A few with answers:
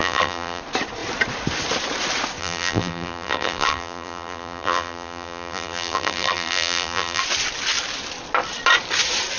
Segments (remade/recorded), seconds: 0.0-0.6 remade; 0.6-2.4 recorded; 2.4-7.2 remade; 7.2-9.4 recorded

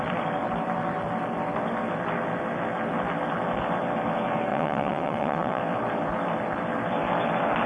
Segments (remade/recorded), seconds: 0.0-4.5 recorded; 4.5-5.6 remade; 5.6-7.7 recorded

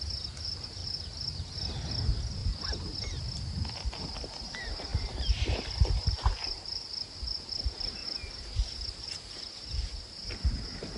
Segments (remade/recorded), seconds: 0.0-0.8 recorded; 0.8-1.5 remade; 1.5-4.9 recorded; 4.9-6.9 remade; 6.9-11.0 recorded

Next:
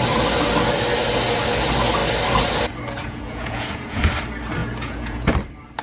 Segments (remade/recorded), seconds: 0.0-3.0 recorded; 3.0-4.0 remade; 4.0-4.6 recorded; 4.6-5.3 remade; 5.3-5.8 recorded